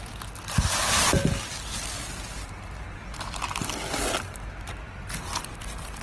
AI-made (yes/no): no